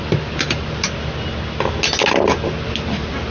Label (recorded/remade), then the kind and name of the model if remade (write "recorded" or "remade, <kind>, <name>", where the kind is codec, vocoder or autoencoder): recorded